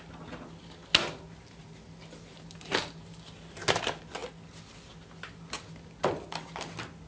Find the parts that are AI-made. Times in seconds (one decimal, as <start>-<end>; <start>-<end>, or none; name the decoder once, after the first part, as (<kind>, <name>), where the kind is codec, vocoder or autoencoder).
none